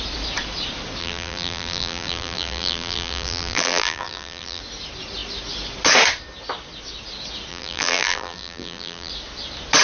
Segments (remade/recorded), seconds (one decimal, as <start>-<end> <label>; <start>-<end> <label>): 0.0-1.0 recorded; 1.0-4.6 remade; 4.6-7.5 recorded; 7.5-9.1 remade; 9.1-9.8 recorded